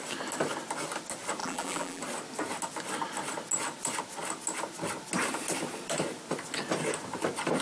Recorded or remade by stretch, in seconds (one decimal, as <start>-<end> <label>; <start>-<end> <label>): 0.0-1.4 recorded; 1.4-2.0 remade; 2.0-7.6 recorded